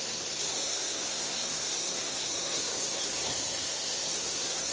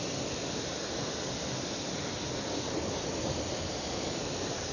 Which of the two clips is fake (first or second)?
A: first